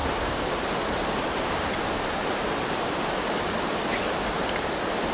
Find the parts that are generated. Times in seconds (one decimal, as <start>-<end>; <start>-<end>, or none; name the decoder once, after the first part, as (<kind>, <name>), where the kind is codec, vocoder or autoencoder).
0.0-3.1 (vocoder, BigVGAN v2)